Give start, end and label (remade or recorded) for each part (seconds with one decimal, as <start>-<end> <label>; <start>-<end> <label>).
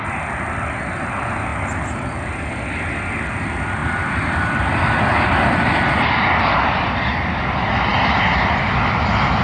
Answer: 0.0-9.4 recorded